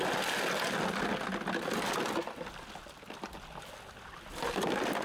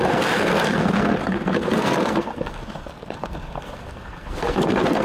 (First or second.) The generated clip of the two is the second